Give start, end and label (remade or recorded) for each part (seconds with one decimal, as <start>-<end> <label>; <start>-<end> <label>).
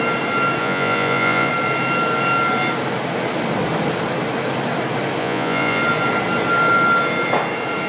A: 0.0-0.6 recorded; 0.6-1.5 remade; 1.5-5.2 recorded; 5.2-5.8 remade; 5.8-7.9 recorded